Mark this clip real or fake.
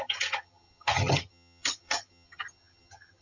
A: fake